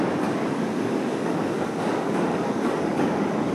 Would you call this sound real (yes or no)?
no